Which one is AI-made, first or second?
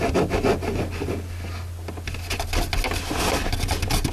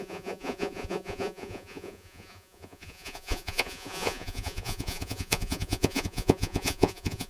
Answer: second